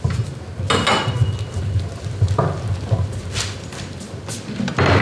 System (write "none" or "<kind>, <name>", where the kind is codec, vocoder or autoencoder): none